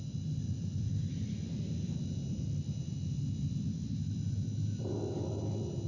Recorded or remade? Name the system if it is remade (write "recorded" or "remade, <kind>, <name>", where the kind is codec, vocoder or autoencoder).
recorded